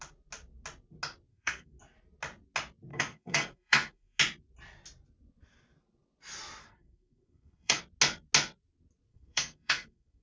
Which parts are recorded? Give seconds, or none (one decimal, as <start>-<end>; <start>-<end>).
0.0-1.3; 1.8-2.9; 4.2-6.6; 7.8-9.1